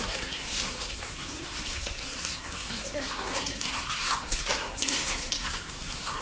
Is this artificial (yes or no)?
yes